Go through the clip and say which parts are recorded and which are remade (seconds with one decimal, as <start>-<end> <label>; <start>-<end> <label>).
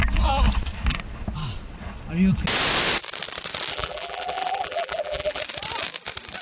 0.0-3.7 recorded; 3.7-5.4 remade; 5.4-6.4 recorded